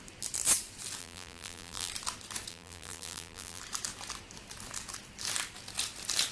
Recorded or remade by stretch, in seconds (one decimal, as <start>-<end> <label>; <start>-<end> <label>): 0.0-1.0 recorded; 1.0-1.9 remade; 1.9-2.5 recorded; 2.5-3.6 remade; 3.6-6.3 recorded